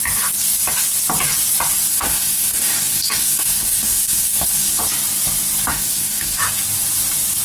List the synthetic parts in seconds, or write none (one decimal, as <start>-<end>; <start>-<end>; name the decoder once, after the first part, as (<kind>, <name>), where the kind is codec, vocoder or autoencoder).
1.9-4.8 (codec, DAC); 5.7-6.4